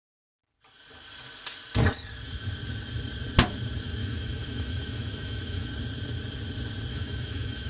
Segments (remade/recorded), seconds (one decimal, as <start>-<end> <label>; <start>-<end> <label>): 0.0-4.0 recorded; 4.0-5.7 remade; 5.7-6.9 recorded; 6.9-7.7 remade